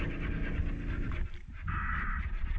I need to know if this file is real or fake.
real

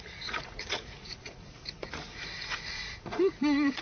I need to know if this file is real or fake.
fake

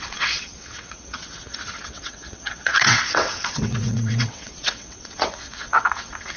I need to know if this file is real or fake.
fake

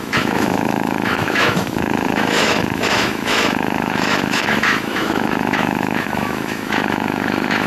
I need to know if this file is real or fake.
fake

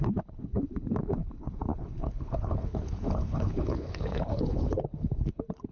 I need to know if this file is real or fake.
fake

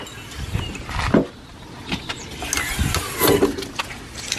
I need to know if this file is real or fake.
real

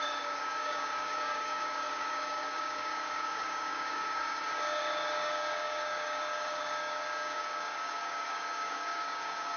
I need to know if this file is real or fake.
fake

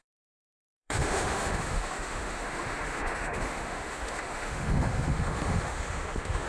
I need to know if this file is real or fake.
fake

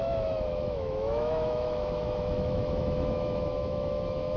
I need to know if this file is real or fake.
fake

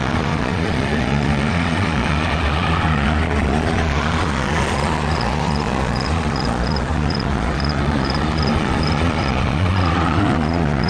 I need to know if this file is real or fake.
fake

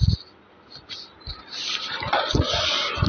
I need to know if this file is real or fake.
real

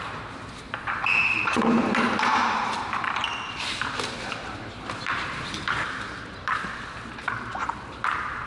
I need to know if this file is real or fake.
fake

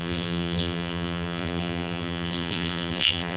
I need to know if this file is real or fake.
fake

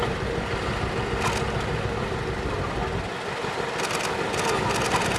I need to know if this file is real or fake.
real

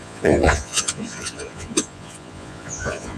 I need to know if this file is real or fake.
fake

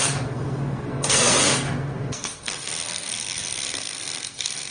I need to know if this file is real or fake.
fake